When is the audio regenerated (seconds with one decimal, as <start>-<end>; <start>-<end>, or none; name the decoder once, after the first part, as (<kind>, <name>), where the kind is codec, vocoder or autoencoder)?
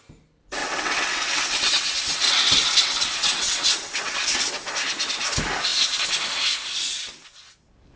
0.6-4.5 (vocoder, WaveNeXt)